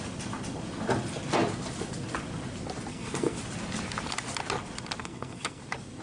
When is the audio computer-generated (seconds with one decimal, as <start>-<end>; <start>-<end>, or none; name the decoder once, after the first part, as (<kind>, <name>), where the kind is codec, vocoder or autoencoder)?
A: 2.9-3.4 (codec, SNAC); 5.0-5.6